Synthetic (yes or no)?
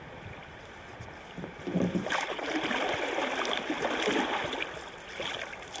no